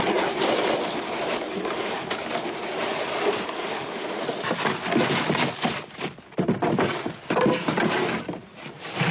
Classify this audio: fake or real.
real